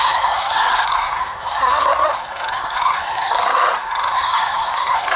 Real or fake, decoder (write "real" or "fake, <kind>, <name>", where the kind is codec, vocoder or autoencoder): fake, codec, SNAC